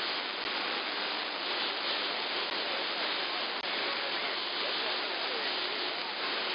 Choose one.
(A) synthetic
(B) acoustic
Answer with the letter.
B